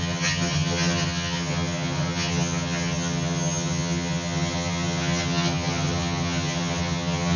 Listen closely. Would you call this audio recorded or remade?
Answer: remade